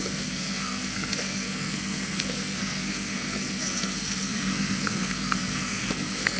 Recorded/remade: remade